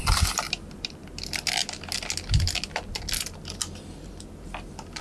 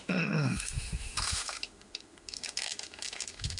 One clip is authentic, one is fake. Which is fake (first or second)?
second